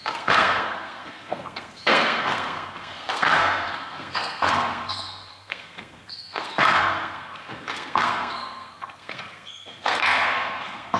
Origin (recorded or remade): remade